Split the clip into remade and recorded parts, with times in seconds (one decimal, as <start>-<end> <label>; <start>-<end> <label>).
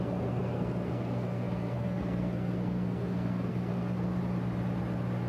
0.0-4.2 remade; 4.2-5.3 recorded